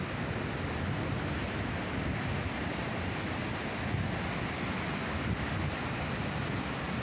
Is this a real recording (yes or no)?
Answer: yes